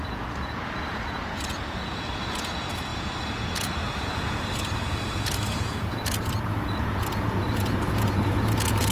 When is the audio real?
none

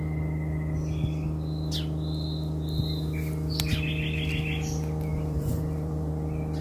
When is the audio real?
0.0-5.1; 6.1-6.6

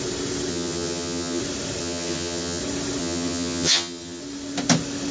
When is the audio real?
0.0-0.5; 1.4-1.8; 2.6-3.0; 4.2-5.1

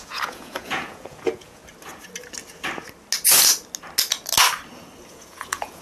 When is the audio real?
1.6-5.1

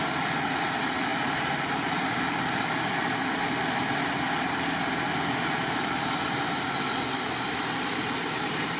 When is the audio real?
0.0-8.8

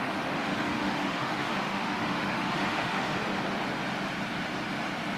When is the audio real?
3.2-5.2

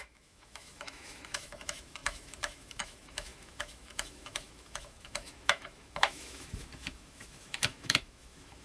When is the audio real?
none